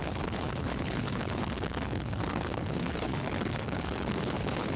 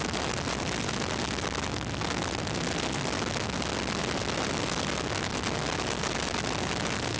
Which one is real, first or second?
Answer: second